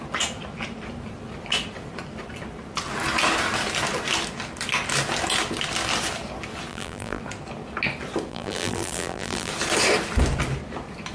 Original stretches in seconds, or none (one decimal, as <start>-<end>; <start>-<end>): 0.0-6.7; 7.2-8.3; 9.5-11.1